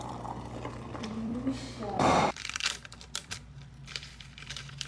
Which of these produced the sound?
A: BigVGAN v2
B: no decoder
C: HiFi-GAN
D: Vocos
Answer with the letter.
A